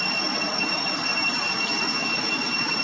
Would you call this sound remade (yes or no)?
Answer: no